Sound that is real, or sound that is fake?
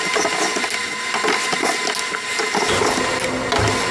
real